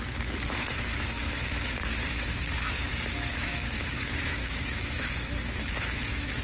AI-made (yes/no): yes